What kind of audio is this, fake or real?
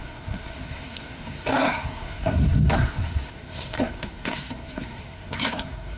fake